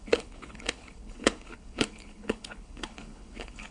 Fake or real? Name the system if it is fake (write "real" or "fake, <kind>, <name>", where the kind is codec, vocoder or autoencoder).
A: fake, codec, HILCodec